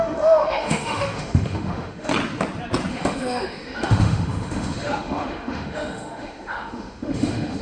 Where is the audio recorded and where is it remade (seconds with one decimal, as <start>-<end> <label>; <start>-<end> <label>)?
0.0-2.1 remade; 2.1-2.9 recorded; 2.9-7.6 remade